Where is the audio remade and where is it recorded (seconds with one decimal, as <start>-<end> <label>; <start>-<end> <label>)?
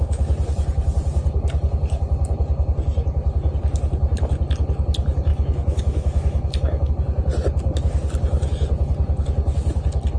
0.0-5.3 recorded; 5.3-6.9 remade; 6.9-10.2 recorded